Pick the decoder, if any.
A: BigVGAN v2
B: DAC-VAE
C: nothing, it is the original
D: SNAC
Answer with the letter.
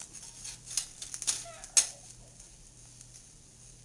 C